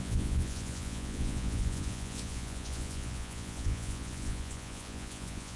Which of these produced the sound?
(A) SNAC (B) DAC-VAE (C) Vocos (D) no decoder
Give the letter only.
C